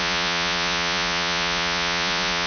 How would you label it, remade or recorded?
remade